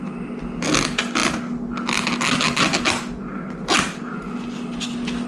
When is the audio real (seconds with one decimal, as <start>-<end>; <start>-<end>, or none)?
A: 0.0-5.3